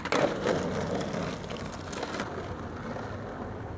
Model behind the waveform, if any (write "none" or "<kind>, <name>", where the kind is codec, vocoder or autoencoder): none